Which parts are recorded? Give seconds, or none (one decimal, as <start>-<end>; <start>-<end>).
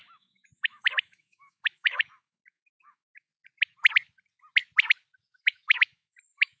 3.3-5.4